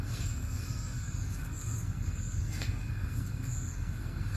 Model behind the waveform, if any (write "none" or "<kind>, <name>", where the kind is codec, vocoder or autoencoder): codec, SNAC